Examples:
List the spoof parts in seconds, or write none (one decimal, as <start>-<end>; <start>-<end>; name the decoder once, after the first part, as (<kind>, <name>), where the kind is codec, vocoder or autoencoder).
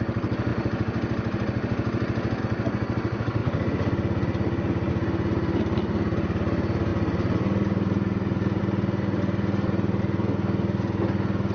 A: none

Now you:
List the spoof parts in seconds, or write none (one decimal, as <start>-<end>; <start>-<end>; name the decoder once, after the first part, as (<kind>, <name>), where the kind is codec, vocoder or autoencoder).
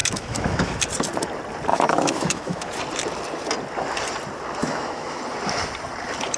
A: 0.0-0.8 (autoencoder, DAC-VAE); 1.7-2.7; 4.6-5.2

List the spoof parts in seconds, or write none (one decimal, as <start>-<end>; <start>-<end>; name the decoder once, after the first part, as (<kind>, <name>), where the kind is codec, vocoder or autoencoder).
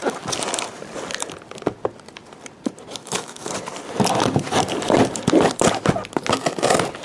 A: 3.0-3.5 (autoencoder, DAC-VAE)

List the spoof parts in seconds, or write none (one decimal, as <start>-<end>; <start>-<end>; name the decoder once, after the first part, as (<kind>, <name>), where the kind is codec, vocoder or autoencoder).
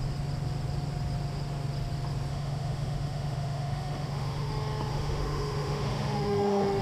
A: 2.3-4.5 (autoencoder, DAC-VAE); 4.9-6.8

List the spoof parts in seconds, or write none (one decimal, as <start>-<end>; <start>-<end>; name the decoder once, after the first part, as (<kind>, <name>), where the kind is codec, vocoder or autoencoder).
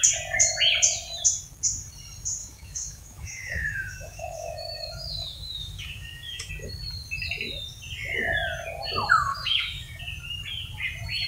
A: 2.4-6.5 (autoencoder, DAC-VAE); 9.3-10.0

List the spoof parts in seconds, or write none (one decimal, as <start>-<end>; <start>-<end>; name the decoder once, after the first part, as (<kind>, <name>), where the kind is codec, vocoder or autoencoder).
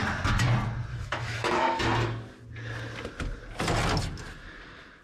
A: 0.9-1.8 (autoencoder, DAC-VAE)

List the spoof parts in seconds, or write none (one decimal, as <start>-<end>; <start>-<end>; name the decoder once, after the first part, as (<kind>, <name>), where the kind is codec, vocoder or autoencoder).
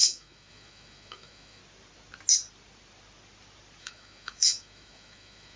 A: 0.0-1.6 (autoencoder, DAC-VAE); 3.8-5.6